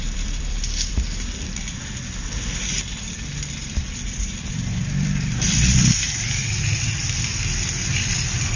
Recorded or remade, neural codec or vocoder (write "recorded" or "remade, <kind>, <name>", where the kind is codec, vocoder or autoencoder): remade, vocoder, BigVGAN v2